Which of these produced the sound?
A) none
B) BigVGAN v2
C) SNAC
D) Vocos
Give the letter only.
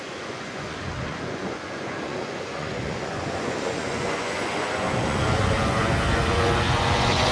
D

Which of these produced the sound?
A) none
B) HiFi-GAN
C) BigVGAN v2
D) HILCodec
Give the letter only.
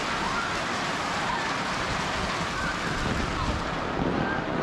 A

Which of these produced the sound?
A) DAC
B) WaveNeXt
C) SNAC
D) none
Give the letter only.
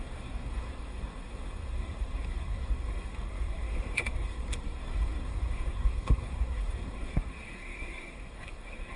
C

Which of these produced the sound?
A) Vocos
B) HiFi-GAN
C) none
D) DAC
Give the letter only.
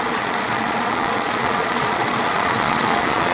A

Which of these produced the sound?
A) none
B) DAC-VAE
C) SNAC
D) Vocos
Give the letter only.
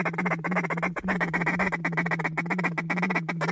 A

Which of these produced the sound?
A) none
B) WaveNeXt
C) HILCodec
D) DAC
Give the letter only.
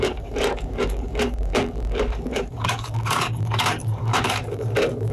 D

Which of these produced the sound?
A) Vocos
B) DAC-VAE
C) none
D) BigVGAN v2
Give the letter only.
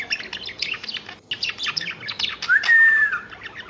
C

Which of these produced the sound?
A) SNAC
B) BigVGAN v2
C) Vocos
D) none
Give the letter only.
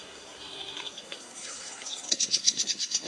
A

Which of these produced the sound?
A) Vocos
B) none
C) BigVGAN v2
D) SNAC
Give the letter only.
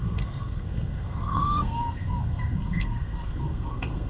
D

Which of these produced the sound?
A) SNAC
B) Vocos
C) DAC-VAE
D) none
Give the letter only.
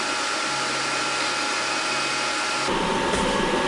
D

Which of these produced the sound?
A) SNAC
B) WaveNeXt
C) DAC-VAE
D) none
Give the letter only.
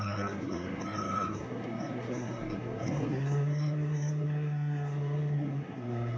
A